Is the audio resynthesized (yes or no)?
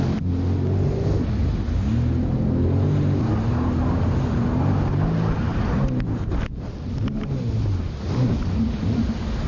no